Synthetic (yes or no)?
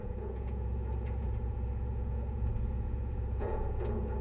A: yes